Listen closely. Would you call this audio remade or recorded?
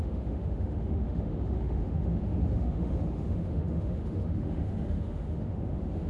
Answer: remade